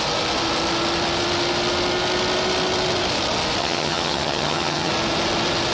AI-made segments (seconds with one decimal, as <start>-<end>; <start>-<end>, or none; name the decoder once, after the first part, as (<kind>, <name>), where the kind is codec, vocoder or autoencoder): 3.6-4.9 (vocoder, HiFi-GAN)